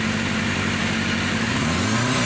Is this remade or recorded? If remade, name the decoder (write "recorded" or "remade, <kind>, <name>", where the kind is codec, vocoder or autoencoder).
recorded